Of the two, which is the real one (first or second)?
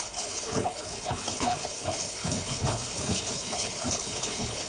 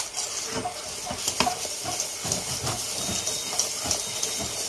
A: second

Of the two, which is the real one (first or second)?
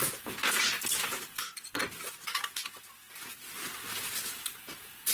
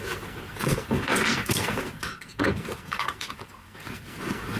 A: first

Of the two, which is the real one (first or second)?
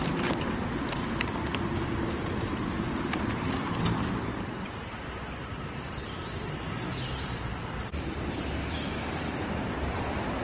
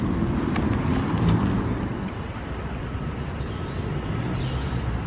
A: second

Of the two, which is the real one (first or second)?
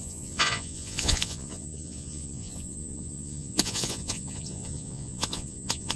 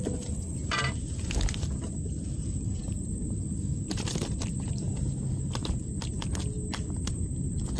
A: second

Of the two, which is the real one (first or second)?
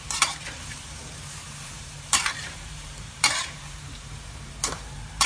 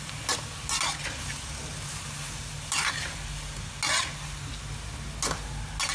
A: second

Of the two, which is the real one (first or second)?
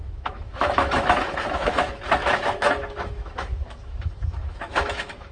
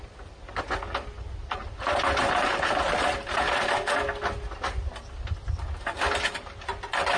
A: second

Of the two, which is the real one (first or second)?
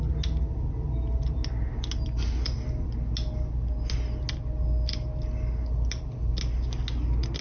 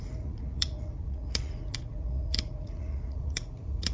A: first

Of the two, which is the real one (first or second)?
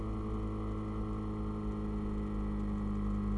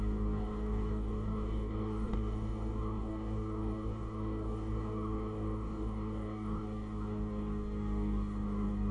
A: first